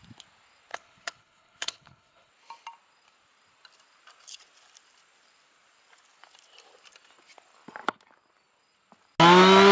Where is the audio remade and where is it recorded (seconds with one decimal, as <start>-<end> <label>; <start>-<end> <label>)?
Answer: 0.0-0.7 recorded; 0.7-2.3 remade; 2.3-9.7 recorded